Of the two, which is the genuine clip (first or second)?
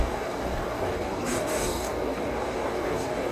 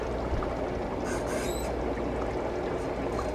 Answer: second